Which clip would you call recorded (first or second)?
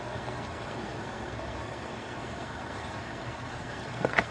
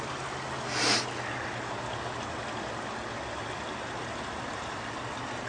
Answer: second